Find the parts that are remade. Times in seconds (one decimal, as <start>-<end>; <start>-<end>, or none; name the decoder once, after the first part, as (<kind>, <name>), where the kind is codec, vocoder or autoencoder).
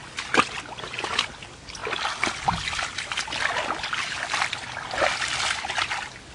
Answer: none